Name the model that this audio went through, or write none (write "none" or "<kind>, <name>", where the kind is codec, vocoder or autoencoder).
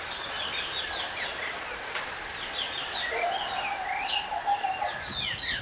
none